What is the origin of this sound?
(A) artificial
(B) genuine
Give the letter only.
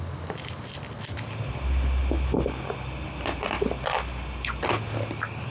B